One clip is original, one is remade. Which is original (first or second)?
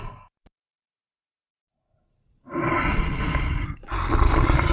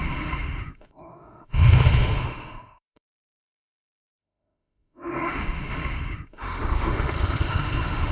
first